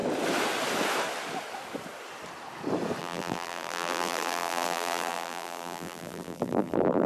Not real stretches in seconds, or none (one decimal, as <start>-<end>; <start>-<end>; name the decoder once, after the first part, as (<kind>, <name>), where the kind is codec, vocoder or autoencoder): 3.0-7.1 (vocoder, BigVGAN v2)